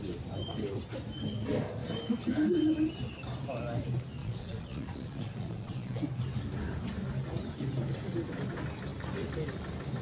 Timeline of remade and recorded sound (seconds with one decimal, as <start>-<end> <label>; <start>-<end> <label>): 0.0-4.2 recorded; 4.2-6.0 remade; 6.0-10.0 recorded